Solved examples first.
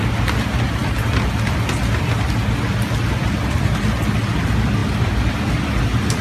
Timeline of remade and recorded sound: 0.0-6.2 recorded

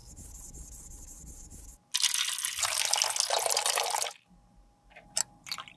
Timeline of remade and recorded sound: 0.0-5.8 recorded

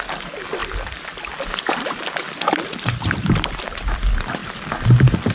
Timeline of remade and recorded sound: 0.0-5.3 recorded

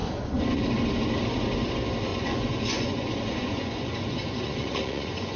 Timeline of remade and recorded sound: 0.0-0.6 remade; 0.6-2.1 recorded; 2.1-5.4 remade

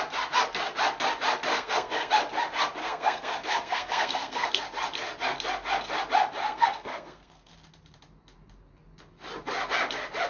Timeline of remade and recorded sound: 0.0-1.5 recorded; 1.5-2.1 remade; 2.1-2.8 recorded; 2.8-4.6 remade; 4.6-6.4 recorded; 6.4-7.5 remade; 7.5-10.3 recorded

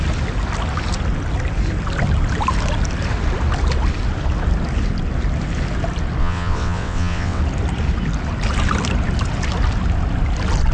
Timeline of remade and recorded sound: 0.0-6.2 recorded; 6.2-7.4 remade; 7.4-10.7 recorded